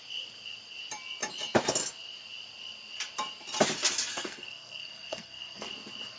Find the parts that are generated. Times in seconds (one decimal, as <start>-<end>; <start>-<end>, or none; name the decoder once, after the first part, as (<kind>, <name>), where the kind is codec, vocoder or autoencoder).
4.1-5.7 (codec, SNAC)